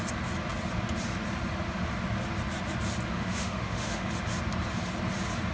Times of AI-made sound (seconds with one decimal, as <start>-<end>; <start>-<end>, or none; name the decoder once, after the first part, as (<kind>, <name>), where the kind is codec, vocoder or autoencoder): 3.1-4.2 (autoencoder, DAC-VAE)